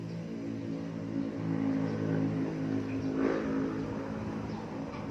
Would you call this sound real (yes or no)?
yes